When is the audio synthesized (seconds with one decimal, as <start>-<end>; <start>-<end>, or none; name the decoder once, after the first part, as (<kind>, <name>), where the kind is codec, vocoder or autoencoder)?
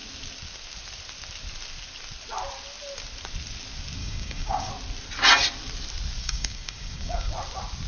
4.0-4.7 (codec, DAC); 6.2-7.3